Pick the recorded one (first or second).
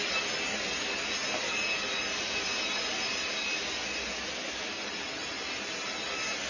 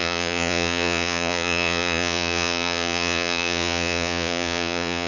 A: first